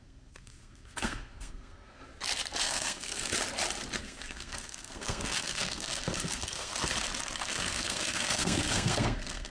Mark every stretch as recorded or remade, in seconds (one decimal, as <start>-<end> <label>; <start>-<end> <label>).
0.0-2.0 remade; 2.0-2.6 recorded; 2.6-3.3 remade; 3.3-4.0 recorded; 4.0-6.7 remade; 6.7-7.4 recorded; 7.4-9.5 remade